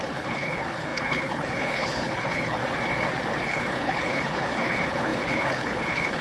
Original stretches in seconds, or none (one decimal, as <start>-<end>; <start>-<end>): 2.6-3.4